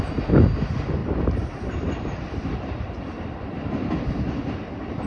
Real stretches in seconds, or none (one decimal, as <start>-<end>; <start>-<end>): 0.0-1.0; 4.1-5.1